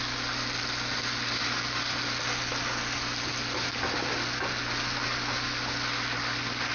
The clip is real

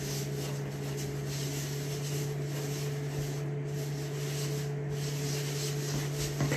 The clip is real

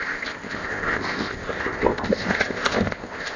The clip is fake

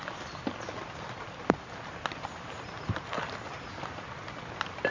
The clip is real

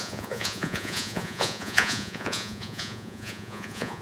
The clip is fake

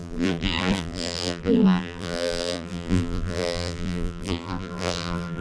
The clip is fake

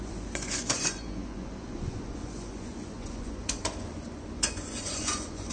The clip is fake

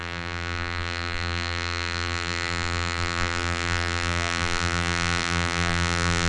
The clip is fake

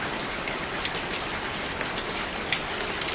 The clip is real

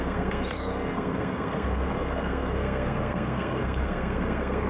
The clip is fake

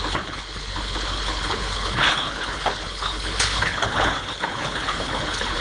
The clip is fake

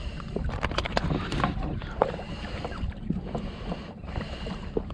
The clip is fake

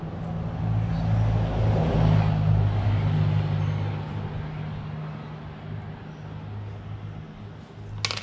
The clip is real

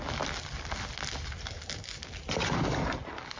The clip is real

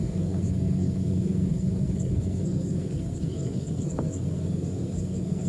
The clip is fake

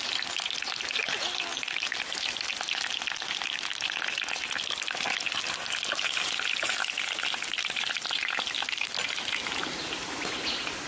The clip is real